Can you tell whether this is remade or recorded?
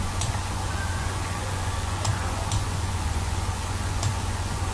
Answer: remade